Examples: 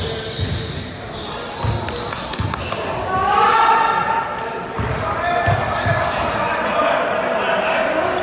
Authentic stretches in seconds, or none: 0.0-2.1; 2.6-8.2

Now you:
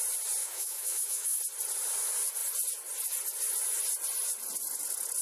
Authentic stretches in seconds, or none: 0.0-0.4; 1.4-5.2